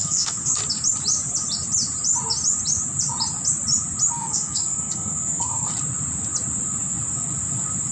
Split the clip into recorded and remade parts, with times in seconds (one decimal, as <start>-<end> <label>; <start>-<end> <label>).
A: 0.0-0.6 remade; 0.6-4.1 recorded; 4.1-5.7 remade; 5.7-7.9 recorded

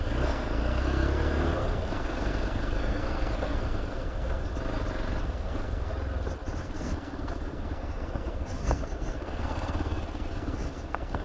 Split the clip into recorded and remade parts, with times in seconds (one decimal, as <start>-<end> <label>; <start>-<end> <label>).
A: 0.0-4.5 remade; 4.5-5.2 recorded; 5.2-5.9 remade; 5.9-6.6 recorded; 6.6-11.2 remade

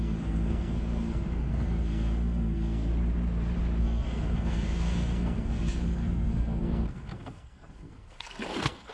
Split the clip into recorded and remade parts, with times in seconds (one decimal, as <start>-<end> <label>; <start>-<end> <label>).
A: 0.0-2.9 remade; 2.9-3.8 recorded; 3.8-8.9 remade

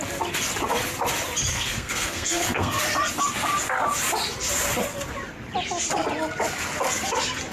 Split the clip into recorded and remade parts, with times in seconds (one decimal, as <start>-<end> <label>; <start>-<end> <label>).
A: 0.0-1.5 recorded; 1.5-2.8 remade; 2.8-7.5 recorded

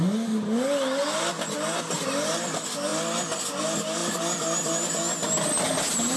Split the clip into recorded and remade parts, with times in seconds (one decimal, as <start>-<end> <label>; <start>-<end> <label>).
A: 0.0-6.2 recorded